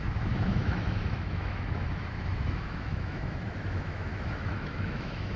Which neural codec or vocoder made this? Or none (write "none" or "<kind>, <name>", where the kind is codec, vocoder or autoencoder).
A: autoencoder, DAC-VAE